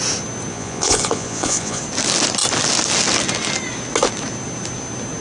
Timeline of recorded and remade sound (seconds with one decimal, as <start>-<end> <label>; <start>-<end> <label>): 0.0-0.5 recorded; 0.5-1.8 remade; 1.8-5.2 recorded